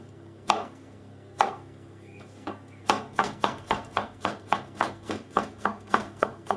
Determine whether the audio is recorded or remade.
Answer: remade